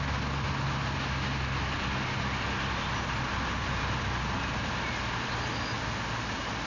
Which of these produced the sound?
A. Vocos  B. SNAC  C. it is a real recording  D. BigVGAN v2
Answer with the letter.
C